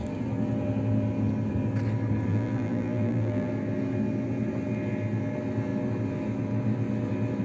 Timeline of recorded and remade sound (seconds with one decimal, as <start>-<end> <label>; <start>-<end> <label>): 0.0-2.3 recorded; 2.3-3.5 remade; 3.5-7.4 recorded